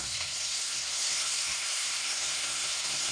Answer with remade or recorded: remade